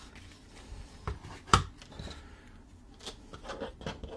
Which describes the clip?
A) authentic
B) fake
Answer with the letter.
A